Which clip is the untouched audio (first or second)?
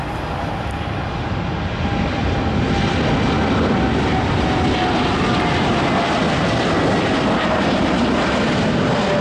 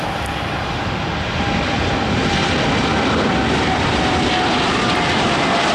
first